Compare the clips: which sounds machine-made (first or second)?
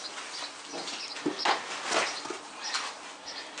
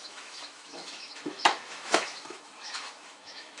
second